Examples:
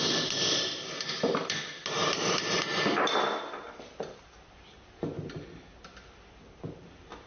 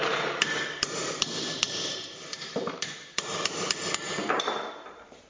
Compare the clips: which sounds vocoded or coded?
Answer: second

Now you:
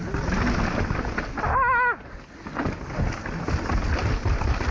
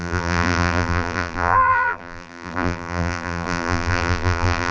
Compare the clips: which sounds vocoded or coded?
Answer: second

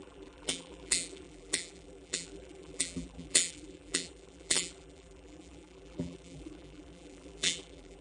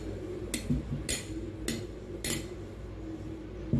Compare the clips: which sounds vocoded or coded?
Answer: first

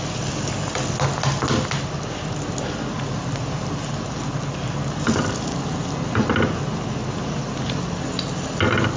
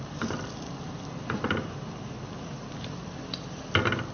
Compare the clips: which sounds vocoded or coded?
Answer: second